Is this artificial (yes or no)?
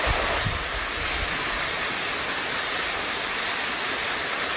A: no